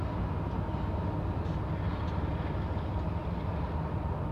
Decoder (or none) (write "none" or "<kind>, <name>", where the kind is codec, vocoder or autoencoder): none